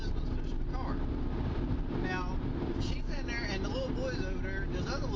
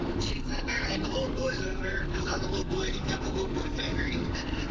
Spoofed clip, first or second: second